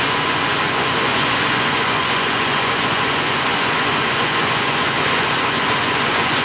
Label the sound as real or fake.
fake